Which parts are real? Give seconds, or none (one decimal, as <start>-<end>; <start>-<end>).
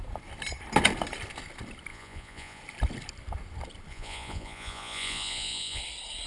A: 0.0-1.9; 2.6-3.9; 5.8-6.3